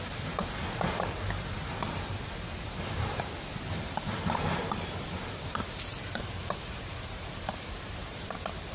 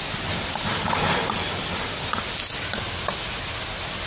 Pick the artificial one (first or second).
first